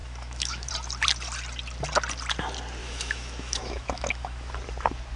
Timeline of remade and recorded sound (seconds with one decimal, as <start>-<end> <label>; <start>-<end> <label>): 0.0-0.7 remade; 0.7-2.8 recorded; 2.8-4.5 remade; 4.5-5.2 recorded